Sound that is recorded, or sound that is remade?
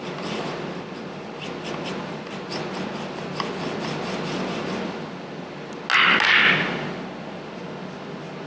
recorded